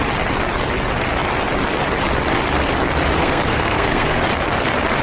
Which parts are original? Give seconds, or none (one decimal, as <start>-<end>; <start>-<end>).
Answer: 0.0-3.2; 4.3-5.0